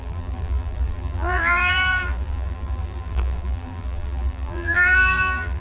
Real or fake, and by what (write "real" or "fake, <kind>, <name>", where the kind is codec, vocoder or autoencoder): fake, vocoder, BigVGAN v2